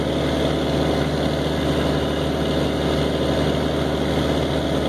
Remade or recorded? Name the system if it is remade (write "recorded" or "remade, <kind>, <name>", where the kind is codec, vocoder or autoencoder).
recorded